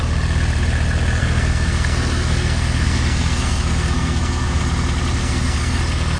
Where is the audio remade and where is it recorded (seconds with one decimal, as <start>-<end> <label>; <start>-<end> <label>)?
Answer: 0.0-1.2 recorded; 1.2-4.6 remade; 4.6-5.2 recorded; 5.2-5.8 remade; 5.8-6.2 recorded